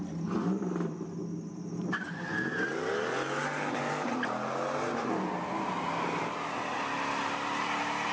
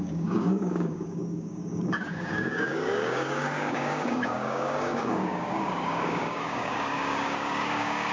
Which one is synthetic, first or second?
second